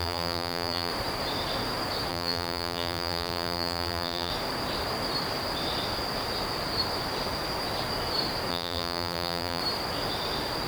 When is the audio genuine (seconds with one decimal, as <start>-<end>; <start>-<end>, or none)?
0.9-2.1; 4.3-8.5; 9.6-10.7